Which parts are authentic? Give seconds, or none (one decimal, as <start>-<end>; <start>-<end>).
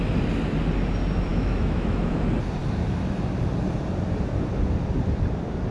0.0-1.3; 2.2-5.7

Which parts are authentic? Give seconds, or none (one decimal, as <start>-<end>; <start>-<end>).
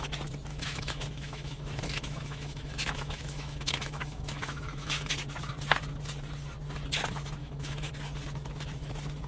0.0-0.5; 5.1-7.4; 7.9-9.3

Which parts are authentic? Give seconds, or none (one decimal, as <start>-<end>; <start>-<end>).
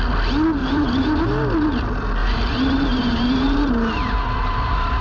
0.0-0.6; 1.2-2.2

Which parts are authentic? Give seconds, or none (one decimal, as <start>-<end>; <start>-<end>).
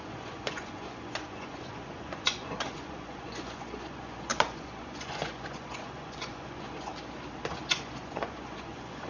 6.9-7.5